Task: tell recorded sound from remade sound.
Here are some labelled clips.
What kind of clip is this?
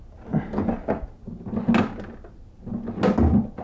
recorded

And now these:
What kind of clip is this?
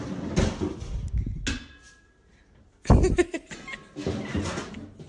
recorded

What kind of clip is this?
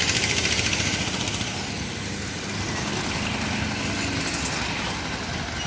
recorded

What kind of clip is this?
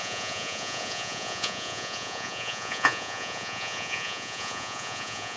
remade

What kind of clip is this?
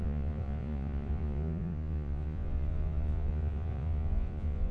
remade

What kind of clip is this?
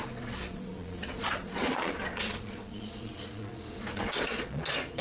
remade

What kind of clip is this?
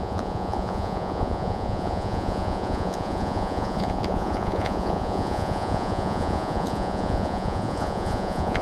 remade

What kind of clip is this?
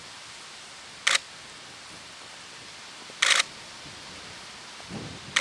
recorded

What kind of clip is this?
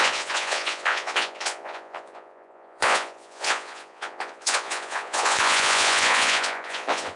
remade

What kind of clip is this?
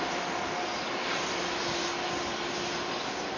recorded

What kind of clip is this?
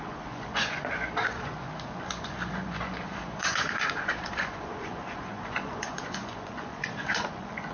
remade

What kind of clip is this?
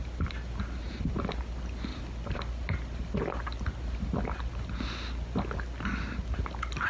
recorded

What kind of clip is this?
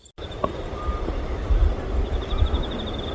recorded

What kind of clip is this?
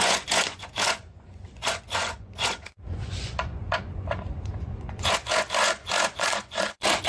remade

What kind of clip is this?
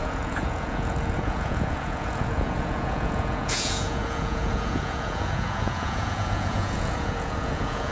remade